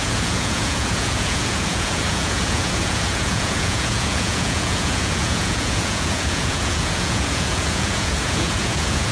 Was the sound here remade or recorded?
remade